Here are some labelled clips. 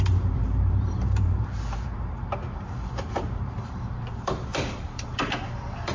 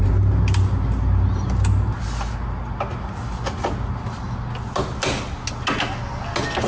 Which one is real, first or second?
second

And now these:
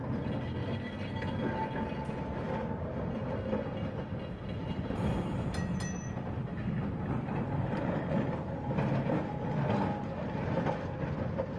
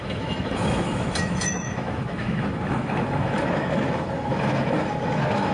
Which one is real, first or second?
first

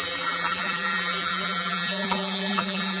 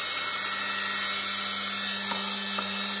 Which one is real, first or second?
second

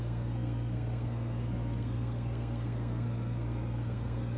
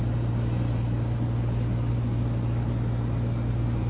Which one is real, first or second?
second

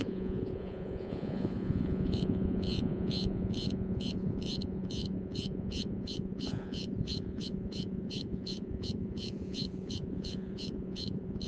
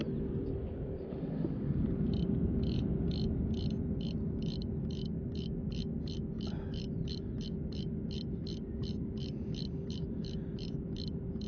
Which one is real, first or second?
second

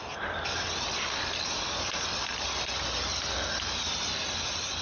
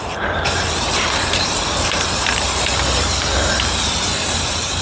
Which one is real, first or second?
first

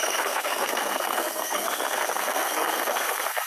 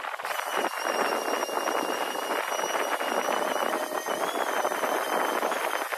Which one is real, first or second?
second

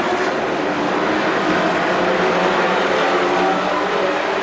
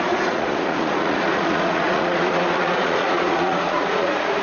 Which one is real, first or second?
first